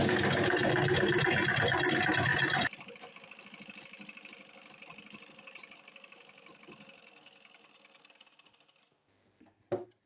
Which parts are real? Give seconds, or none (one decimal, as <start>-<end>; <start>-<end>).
0.0-2.3; 3.1-10.1

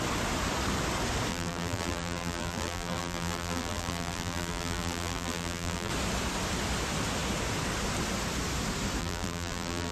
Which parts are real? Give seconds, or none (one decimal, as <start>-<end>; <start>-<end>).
0.0-1.3; 5.9-9.0

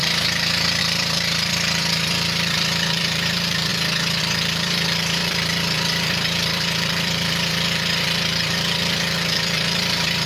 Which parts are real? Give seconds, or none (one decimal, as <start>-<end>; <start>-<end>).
3.7-4.2

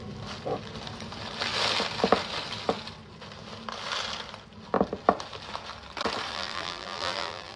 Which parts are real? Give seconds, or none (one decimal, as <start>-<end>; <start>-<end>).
0.0-6.3

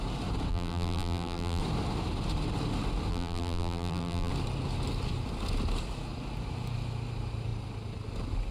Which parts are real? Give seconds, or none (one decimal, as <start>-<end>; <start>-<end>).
0.0-0.5; 1.6-3.1; 4.3-8.5

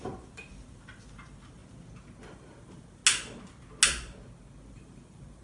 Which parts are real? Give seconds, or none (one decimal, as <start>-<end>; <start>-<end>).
1.6-2.3; 3.0-4.7

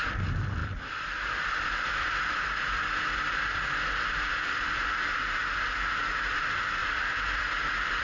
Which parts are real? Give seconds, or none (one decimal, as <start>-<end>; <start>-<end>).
0.0-0.6; 5.4-6.8

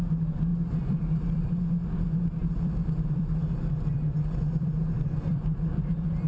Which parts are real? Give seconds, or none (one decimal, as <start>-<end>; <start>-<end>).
0.0-0.5; 1.5-2.4